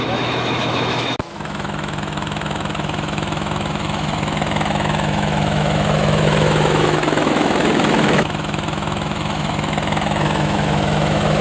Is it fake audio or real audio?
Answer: fake